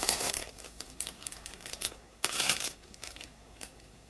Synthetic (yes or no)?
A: yes